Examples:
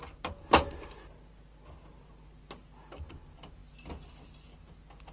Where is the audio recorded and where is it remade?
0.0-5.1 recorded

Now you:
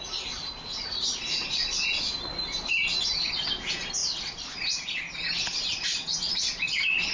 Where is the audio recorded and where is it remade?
0.0-7.1 recorded